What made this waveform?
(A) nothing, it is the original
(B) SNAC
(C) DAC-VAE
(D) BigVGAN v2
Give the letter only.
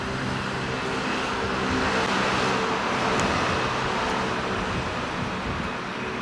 A